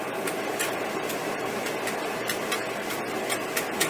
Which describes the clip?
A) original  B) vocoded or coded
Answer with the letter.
A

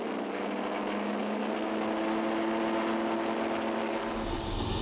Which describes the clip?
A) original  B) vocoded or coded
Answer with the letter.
A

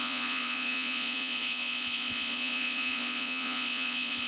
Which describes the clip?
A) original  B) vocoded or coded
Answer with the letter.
B